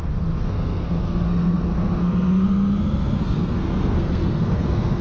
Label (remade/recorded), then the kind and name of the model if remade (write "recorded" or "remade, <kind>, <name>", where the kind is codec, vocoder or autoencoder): remade, codec, SNAC